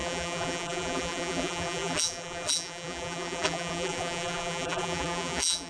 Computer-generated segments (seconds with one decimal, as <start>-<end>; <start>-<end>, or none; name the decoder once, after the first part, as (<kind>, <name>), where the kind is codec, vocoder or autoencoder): 0.0-5.7 (vocoder, BigVGAN v2)